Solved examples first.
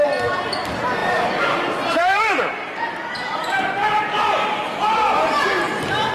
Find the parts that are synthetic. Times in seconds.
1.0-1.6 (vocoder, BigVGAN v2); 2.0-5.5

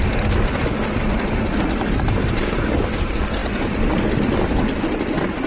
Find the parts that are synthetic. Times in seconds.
0.6-2.4 (vocoder, BigVGAN v2); 3.4-4.8

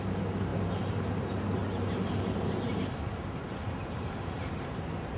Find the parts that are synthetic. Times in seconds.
none